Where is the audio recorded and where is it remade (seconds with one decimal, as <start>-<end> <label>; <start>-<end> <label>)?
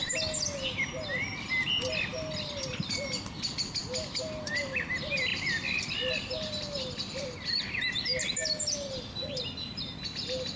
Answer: 0.0-0.9 remade; 0.9-2.1 recorded; 2.1-3.1 remade; 3.1-3.8 recorded; 3.8-4.5 remade; 4.5-5.3 recorded; 5.3-7.2 remade; 7.2-10.6 recorded